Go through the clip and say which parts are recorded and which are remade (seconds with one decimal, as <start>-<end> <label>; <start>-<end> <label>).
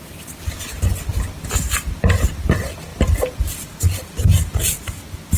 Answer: 0.0-5.4 recorded